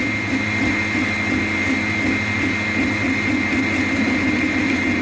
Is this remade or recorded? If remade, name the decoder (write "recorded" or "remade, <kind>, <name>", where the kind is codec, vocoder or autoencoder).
recorded